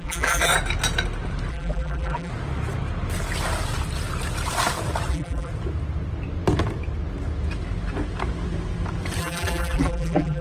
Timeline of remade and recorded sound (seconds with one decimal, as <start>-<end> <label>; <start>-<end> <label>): 0.0-0.5 remade; 0.5-1.5 recorded; 1.5-2.3 remade; 2.3-5.1 recorded; 5.1-5.5 remade; 5.5-9.2 recorded; 9.2-10.4 remade